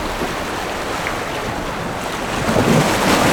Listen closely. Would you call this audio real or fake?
real